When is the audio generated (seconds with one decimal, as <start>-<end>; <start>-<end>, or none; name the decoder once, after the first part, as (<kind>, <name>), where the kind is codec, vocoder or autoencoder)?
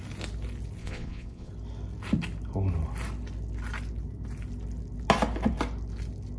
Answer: 0.8-1.5 (vocoder, Vocos)